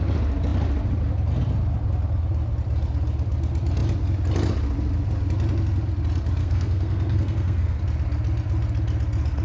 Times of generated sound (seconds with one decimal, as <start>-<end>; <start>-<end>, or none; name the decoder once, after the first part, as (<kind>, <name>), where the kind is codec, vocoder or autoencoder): 6.4-7.8 (codec, SNAC)

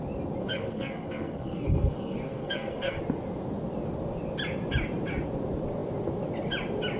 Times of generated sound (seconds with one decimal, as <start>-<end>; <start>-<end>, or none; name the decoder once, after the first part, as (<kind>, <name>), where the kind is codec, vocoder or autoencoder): 0.4-3.0 (codec, SNAC)

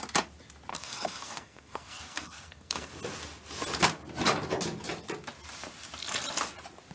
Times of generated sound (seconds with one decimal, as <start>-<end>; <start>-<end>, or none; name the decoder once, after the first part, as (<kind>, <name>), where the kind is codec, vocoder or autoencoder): 0.7-2.9 (codec, SNAC)

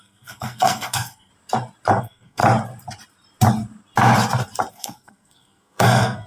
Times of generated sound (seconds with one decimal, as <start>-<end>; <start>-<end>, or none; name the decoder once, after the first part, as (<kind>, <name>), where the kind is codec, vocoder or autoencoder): 0.0-1.3 (codec, SNAC); 2.0-2.4; 4.7-6.3

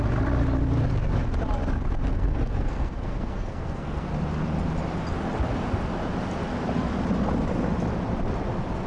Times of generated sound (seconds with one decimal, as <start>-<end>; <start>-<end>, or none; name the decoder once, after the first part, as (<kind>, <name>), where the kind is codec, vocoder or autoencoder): 2.1-4.1 (codec, SNAC)

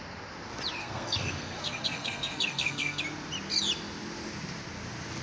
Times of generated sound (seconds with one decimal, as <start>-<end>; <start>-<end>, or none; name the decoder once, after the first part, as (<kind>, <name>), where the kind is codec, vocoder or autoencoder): 0.8-3.0 (codec, SNAC)

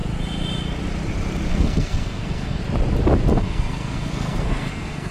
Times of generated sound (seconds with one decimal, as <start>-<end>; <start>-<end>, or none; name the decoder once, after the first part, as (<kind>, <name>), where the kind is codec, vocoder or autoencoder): 1.5-2.6 (codec, SNAC); 3.3-5.1